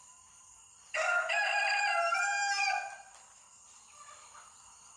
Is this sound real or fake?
fake